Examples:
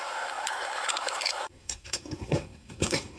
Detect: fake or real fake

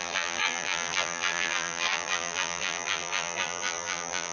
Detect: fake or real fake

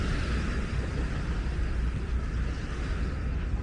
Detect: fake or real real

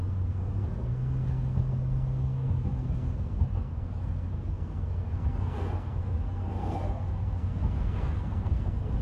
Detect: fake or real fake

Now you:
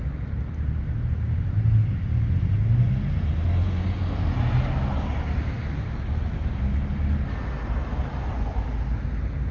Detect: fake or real real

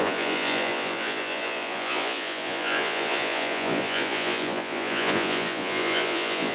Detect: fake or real fake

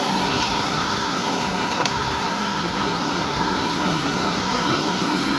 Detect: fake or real fake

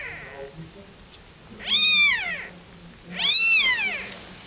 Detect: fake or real real